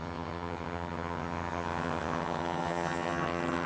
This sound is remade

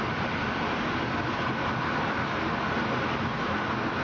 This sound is recorded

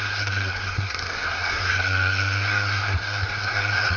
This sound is remade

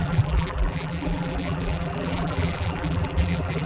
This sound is remade